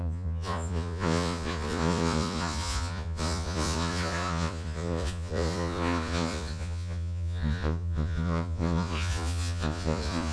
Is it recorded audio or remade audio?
remade